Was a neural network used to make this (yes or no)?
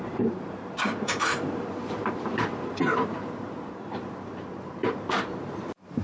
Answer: yes